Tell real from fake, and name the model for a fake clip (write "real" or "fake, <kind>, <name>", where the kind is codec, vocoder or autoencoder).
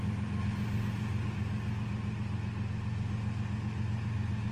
real